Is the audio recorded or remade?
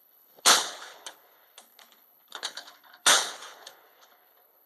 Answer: remade